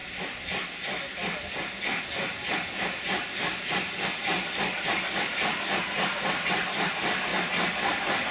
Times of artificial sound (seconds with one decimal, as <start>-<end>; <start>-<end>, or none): none